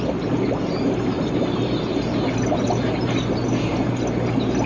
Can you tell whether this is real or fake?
real